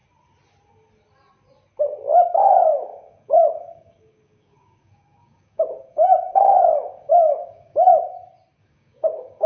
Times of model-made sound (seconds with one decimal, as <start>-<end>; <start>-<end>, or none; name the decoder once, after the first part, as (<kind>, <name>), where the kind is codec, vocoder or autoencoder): 2.3-7.9 (codec, DAC); 8.6-9.5